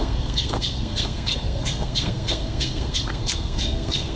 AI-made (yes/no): yes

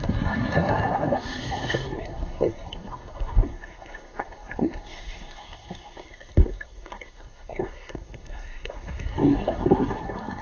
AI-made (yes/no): yes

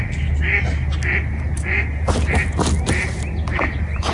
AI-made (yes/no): no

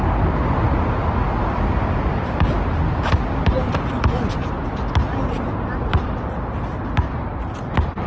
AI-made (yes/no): no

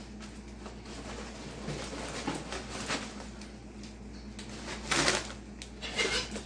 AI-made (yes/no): no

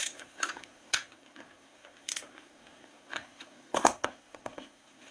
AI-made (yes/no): yes